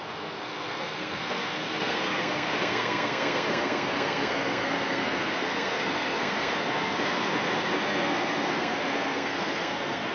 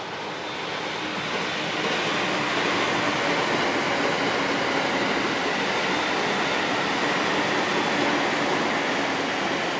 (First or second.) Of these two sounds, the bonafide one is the second